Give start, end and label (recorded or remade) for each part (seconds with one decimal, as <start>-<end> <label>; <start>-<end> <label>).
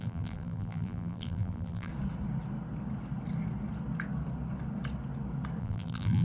0.0-1.9 remade; 1.9-5.6 recorded; 5.6-6.2 remade